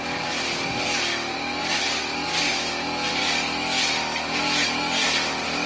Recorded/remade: recorded